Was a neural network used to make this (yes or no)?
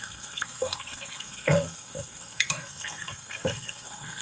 yes